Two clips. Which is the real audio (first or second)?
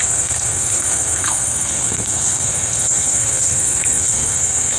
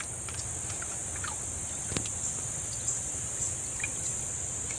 second